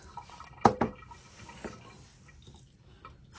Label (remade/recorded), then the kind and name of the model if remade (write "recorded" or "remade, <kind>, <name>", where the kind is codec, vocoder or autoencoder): recorded